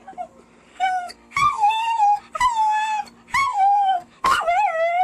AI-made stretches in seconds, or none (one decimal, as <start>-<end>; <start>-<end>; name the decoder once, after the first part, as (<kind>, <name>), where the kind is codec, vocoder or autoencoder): 0.7-2.2 (codec, SNAC); 3.4-4.4